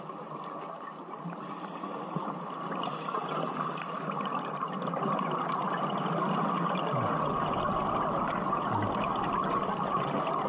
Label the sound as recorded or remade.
recorded